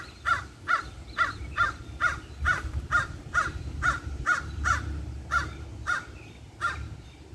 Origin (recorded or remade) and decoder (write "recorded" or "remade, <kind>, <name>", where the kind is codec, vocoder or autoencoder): recorded